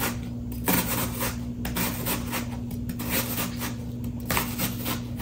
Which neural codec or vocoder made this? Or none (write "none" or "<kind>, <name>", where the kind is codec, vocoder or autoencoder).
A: none